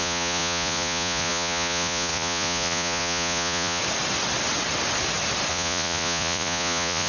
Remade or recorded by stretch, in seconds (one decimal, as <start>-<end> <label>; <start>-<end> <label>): 0.0-3.8 remade; 3.8-5.5 recorded; 5.5-7.1 remade